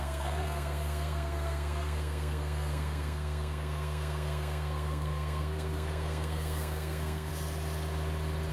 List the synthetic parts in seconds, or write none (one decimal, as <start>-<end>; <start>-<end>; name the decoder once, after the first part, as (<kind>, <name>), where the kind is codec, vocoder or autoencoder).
0.0-7.3 (codec, SNAC)